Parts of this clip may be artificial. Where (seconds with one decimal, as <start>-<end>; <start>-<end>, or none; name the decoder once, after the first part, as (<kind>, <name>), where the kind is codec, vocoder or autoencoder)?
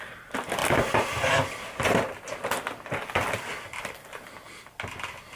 none